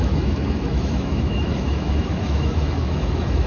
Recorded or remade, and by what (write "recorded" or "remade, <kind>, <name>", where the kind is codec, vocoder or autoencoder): remade, autoencoder, DAC-VAE